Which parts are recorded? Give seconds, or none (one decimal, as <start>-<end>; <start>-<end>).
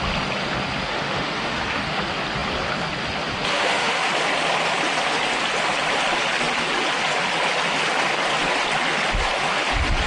0.0-0.9; 1.8-3.5; 4.1-10.1